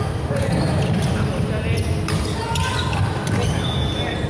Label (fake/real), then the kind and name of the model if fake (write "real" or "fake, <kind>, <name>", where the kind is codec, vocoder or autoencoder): real